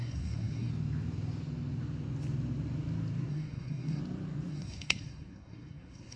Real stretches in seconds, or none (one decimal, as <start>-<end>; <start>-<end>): 0.7-3.3; 4.0-4.5